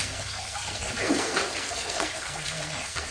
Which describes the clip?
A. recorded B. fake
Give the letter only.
B